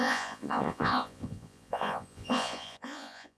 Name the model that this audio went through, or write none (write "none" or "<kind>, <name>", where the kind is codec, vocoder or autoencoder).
vocoder, Vocos